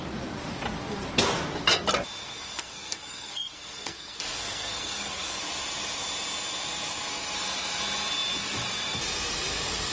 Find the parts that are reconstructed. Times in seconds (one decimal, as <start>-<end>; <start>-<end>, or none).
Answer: 2.2-5.4